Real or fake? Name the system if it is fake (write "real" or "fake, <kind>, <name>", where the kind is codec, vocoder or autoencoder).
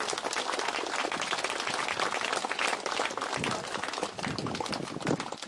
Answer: real